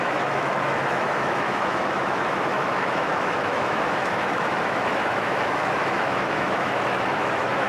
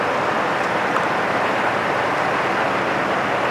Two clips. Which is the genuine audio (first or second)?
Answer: second